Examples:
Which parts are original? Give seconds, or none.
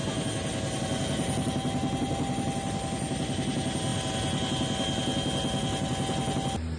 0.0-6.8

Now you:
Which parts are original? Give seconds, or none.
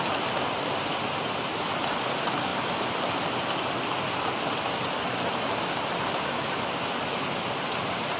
0.0-8.2